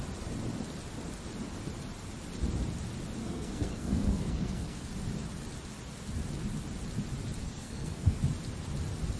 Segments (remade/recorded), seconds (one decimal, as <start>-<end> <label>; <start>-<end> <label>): 0.0-3.2 recorded; 3.2-4.9 remade; 4.9-7.4 recorded; 7.4-8.2 remade; 8.2-9.2 recorded